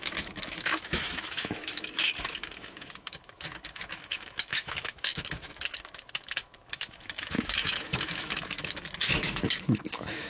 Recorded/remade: remade